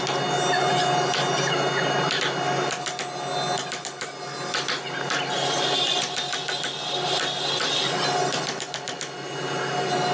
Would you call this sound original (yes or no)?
yes